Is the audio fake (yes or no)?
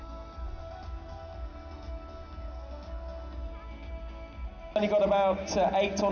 no